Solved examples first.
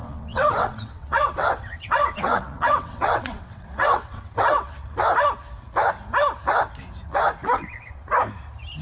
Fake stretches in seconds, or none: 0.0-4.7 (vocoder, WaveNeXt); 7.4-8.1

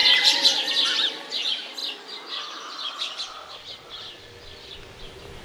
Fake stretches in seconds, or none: none

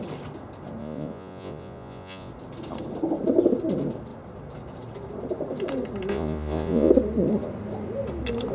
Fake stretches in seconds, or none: 0.8-2.3 (vocoder, Vocos); 6.1-6.9

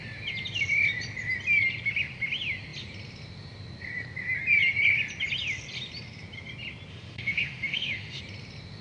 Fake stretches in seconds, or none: 6.9-8.2 (autoencoder, DAC-VAE)

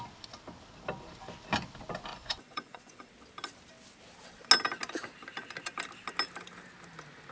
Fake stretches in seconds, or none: 2.1-3.1 (vocoder, Vocos)

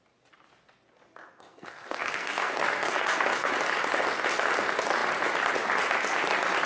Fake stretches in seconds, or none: 1.3-3.5 (codec, SNAC)

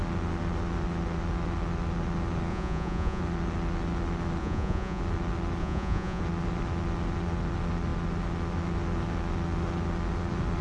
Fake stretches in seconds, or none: 2.5-3.2 (vocoder, Vocos); 4.4-5.0; 5.6-6.2